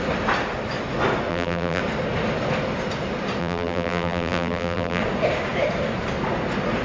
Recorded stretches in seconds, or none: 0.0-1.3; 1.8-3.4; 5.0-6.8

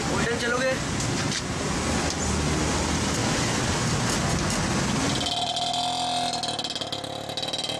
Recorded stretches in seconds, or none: 0.0-7.8

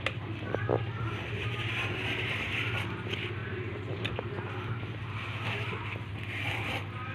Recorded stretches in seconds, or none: 0.0-3.4; 4.1-7.1

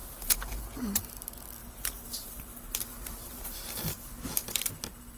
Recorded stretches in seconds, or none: 0.6-1.6; 4.7-5.2

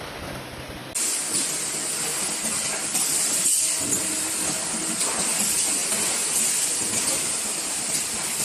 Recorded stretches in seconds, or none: 0.8-3.2